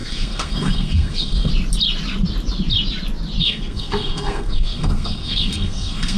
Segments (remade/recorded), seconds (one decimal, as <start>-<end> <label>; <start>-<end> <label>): 0.0-1.5 remade; 1.5-3.4 recorded; 3.4-6.2 remade